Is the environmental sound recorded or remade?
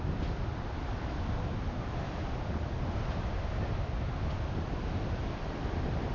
recorded